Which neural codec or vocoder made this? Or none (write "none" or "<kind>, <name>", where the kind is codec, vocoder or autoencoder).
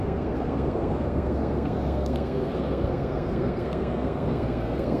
codec, SNAC